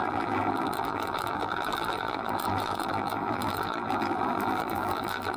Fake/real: fake